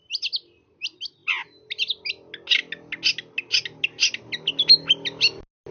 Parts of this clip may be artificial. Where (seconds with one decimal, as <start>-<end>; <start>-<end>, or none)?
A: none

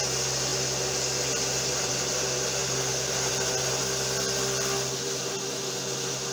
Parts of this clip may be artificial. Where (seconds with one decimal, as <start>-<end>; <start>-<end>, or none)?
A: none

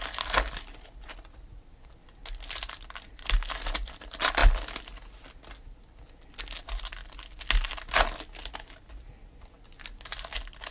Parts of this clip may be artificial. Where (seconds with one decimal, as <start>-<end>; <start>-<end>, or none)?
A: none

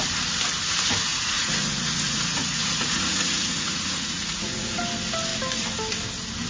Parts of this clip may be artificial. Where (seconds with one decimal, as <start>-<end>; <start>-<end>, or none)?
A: 1.1-4.8

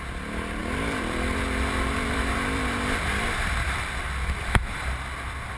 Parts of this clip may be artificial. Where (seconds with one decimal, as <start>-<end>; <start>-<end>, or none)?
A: 0.6-4.0